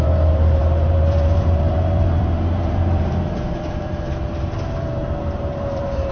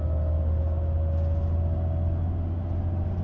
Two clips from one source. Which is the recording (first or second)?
second